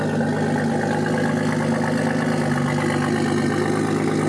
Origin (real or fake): real